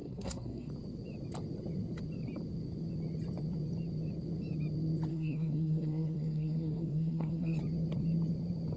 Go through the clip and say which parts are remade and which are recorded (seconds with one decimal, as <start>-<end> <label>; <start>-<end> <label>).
0.0-0.7 remade; 0.7-5.1 recorded; 5.1-7.6 remade; 7.6-8.8 recorded